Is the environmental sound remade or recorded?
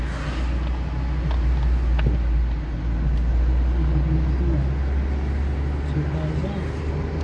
recorded